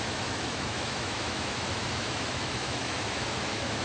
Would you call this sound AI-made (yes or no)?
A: yes